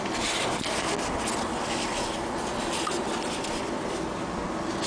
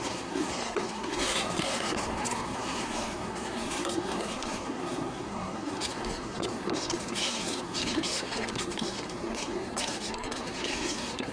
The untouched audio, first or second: first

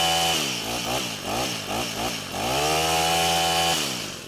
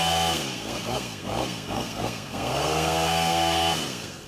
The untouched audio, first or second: first